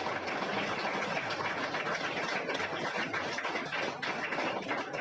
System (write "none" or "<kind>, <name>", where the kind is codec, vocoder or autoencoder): none